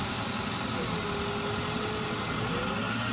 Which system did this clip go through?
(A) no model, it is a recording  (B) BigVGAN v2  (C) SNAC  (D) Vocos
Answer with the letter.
A